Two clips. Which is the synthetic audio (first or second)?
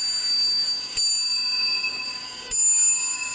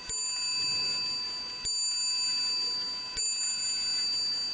first